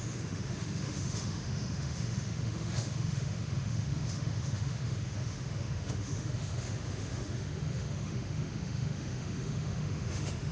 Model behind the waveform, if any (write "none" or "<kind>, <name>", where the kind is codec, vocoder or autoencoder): autoencoder, DAC-VAE